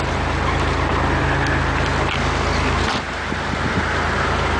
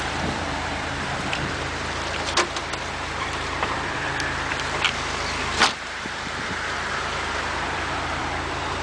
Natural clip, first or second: first